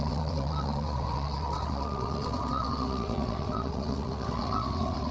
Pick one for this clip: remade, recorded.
remade